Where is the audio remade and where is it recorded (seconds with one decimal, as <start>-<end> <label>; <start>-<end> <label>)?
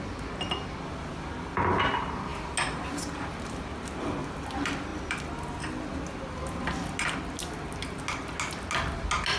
0.0-9.4 recorded